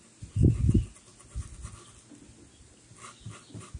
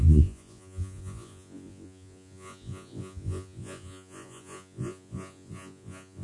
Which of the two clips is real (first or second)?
first